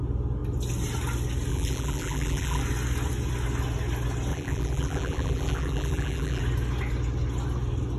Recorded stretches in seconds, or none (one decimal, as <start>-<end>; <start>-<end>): 0.0-1.5; 2.6-4.3; 6.4-8.0